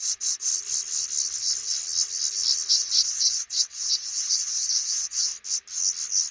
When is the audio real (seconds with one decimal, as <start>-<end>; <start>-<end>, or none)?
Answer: 0.5-2.7; 5.3-6.3

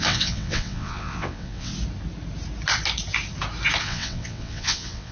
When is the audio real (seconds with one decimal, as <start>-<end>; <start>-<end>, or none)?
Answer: 1.7-3.8

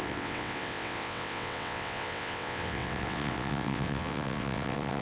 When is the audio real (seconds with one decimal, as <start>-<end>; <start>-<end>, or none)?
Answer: none

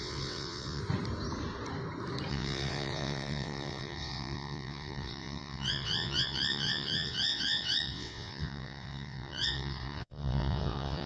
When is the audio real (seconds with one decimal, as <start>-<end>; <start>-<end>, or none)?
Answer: 0.8-2.3

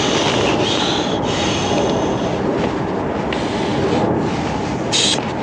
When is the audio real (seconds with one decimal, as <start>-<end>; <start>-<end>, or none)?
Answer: 0.0-5.4

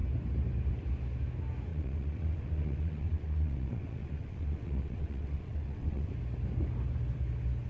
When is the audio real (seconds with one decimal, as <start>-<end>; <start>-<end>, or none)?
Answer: 0.0-1.7; 6.1-7.7

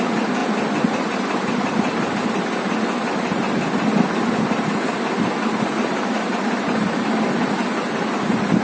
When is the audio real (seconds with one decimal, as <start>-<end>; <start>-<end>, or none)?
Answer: 0.0-8.6